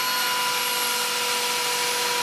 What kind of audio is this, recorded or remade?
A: recorded